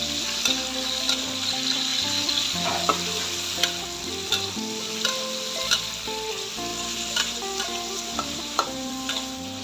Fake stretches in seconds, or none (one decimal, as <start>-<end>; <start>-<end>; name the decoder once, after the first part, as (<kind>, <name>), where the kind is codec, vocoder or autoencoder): 6.7-9.1 (vocoder, BigVGAN v2)